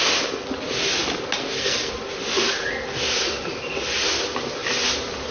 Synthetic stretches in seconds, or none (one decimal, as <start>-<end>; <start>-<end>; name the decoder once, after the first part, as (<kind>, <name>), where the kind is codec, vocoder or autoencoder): 1.4-1.9 (codec, SNAC)